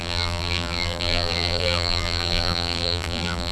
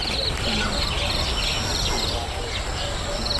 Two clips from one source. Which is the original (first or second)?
second